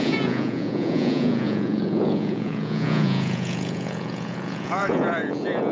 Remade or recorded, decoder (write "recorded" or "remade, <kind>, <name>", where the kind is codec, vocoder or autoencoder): remade, vocoder, Vocos